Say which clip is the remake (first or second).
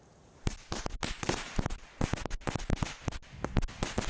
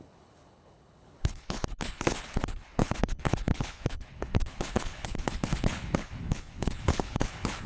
second